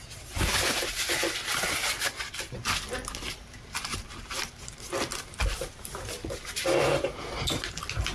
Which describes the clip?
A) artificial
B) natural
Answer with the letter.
B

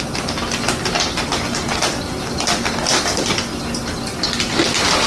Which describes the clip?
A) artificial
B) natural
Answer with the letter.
B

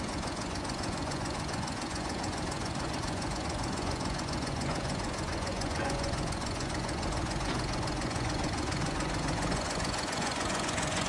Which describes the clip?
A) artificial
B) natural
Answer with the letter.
A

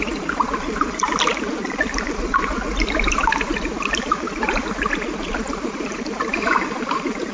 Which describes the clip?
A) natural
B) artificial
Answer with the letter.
A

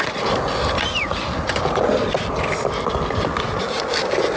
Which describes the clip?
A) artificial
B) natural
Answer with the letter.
B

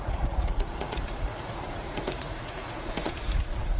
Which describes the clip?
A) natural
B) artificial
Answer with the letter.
B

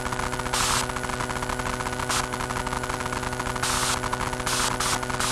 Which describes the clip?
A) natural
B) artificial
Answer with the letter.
A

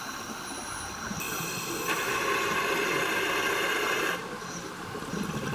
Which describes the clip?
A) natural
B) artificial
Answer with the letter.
A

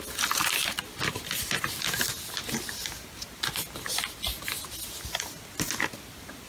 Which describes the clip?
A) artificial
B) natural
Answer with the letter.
B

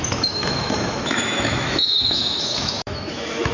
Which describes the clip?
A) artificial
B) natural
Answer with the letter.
A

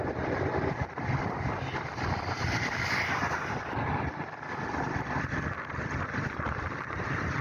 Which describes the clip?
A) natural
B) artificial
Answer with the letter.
B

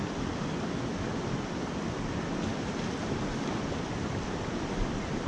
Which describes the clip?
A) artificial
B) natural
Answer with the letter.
B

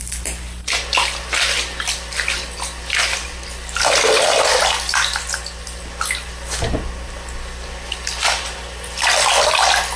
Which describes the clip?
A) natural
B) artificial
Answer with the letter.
A